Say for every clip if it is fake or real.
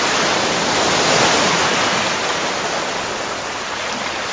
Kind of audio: real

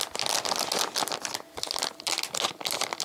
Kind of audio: real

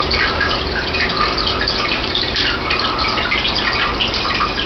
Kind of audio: real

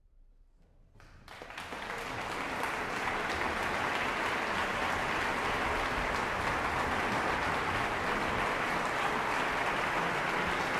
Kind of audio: real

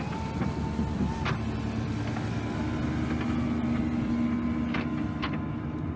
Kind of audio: real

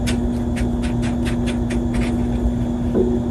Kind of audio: real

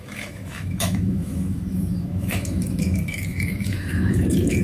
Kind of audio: fake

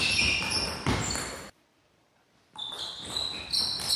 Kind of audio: real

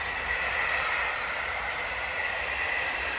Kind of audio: real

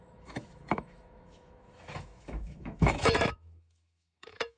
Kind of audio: fake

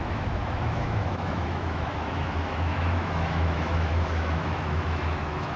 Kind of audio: fake